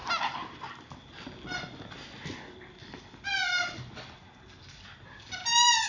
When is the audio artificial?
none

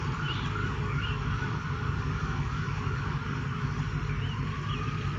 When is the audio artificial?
0.6-3.7 (codec, DAC)

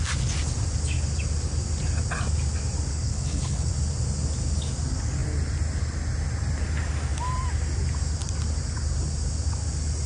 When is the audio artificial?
2.9-3.7 (codec, HILCodec)